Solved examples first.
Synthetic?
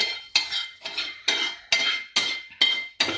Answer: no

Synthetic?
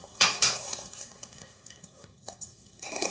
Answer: yes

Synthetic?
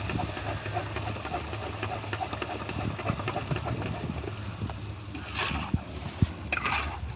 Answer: no